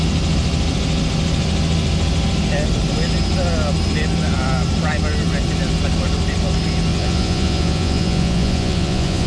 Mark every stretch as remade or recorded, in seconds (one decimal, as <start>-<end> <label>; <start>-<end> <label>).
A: 0.0-6.9 recorded; 6.9-9.3 remade